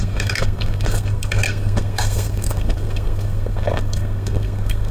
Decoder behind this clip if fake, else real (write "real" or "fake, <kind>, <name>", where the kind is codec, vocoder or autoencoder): fake, codec, SNAC